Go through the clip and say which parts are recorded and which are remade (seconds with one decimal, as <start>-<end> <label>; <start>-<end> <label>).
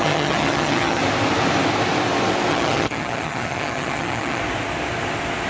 0.0-1.0 remade; 1.0-2.5 recorded; 2.5-4.4 remade; 4.4-5.5 recorded